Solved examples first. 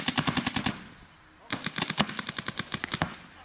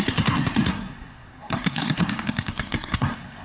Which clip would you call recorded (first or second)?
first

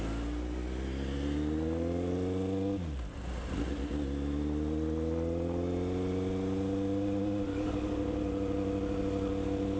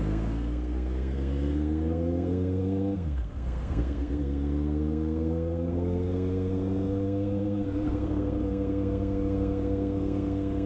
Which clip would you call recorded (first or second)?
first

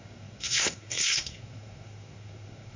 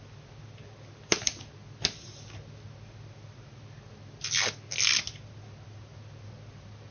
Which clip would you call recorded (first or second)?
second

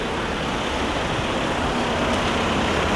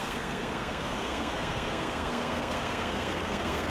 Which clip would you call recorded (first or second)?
first